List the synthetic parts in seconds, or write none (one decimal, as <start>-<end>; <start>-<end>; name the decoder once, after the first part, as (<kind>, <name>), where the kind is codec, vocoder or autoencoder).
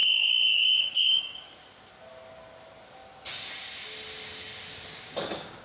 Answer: 0.0-1.6 (codec, DAC); 5.0-5.6